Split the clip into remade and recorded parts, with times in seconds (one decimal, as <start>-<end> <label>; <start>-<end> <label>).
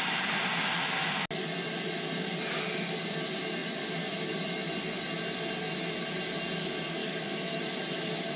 0.0-7.0 recorded; 7.0-7.6 remade; 7.6-8.4 recorded